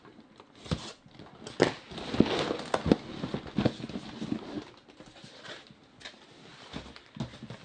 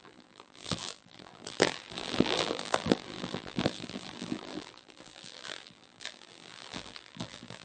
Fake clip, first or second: second